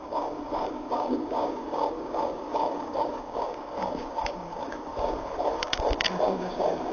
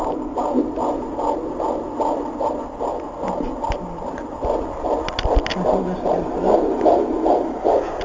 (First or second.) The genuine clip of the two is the second